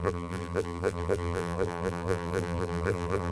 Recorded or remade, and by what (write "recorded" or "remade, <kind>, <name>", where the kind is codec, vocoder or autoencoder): remade, vocoder, BigVGAN v2